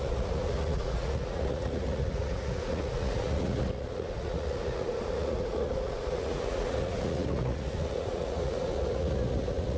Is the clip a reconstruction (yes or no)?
yes